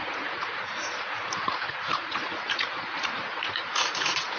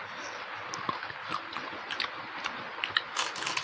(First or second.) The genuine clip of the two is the second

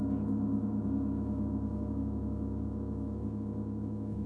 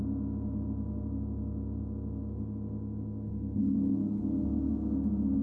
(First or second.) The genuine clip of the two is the second